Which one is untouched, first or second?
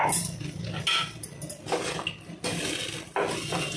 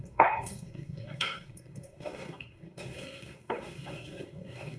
first